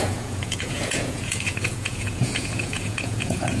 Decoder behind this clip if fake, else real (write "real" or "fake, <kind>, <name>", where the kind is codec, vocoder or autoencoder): fake, vocoder, Vocos